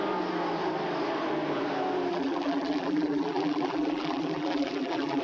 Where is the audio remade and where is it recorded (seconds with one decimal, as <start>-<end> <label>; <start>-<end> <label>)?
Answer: 0.0-2.1 recorded; 2.1-5.2 remade